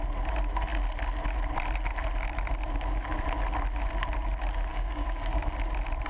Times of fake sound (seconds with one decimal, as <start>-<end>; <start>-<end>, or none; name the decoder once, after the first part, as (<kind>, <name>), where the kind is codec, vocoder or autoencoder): 4.7-5.5 (codec, DAC)